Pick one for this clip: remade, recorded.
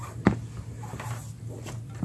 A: recorded